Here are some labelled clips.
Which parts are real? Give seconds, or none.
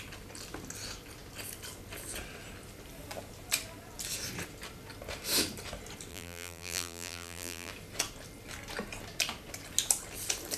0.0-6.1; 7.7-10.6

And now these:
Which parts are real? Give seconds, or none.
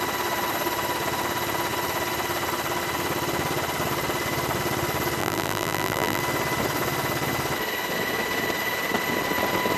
0.0-5.2; 6.2-9.8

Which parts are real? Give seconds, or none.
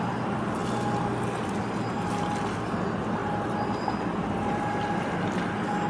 0.0-3.2; 4.0-5.9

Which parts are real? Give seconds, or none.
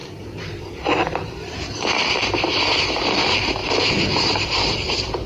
none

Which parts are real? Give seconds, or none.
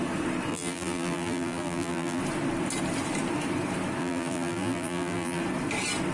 0.0-0.5; 2.2-4.0; 5.4-6.1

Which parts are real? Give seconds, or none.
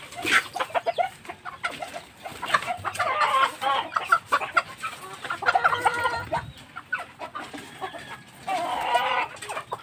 0.0-2.3; 5.3-9.8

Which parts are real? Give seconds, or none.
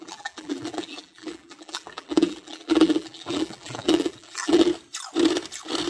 4.7-5.9